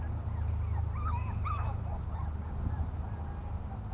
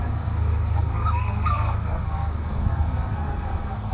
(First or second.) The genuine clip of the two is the first